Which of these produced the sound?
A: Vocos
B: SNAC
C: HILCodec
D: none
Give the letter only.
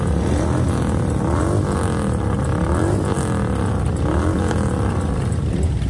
D